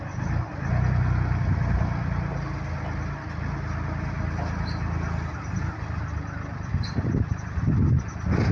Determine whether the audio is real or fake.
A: real